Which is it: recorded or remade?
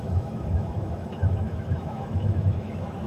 remade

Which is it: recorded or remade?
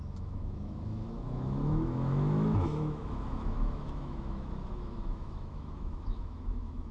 remade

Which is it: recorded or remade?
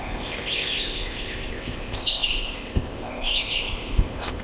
remade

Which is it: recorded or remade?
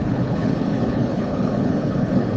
remade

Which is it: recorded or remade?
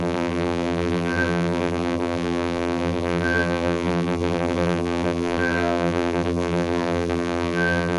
remade